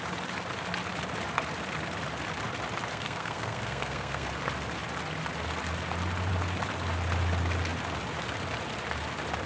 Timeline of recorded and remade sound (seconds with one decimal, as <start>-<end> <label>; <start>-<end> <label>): 0.0-2.9 recorded; 2.9-4.3 remade; 4.3-9.5 recorded